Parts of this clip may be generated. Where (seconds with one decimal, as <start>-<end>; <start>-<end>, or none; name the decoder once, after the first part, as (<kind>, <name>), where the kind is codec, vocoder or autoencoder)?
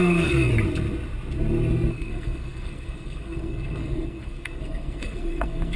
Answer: 0.0-0.5 (codec, SNAC); 1.9-5.8